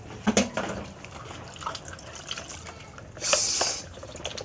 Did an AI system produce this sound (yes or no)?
no